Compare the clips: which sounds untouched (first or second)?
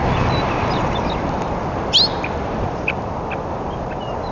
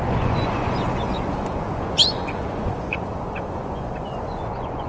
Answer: first